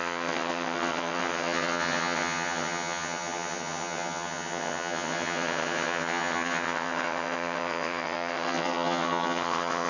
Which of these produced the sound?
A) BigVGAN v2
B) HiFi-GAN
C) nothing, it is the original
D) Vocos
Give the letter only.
B